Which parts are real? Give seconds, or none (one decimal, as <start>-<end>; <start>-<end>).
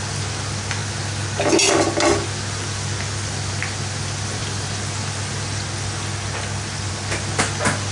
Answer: 0.0-7.9